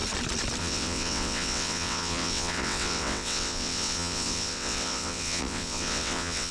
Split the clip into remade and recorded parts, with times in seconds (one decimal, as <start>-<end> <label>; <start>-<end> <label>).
0.0-0.6 recorded; 0.6-6.5 remade